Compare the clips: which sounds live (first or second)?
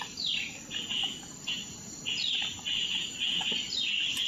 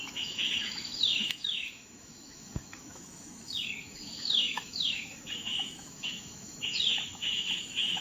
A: first